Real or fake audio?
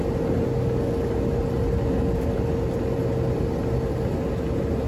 real